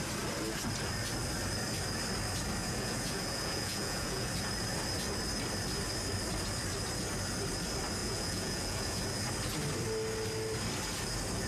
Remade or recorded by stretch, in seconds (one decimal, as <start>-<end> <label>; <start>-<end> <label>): 0.0-2.6 recorded; 2.6-4.3 remade; 4.3-8.0 recorded; 8.0-9.0 remade; 9.0-11.5 recorded